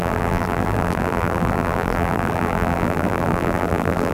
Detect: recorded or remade remade